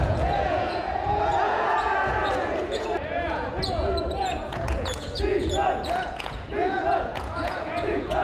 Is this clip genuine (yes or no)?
no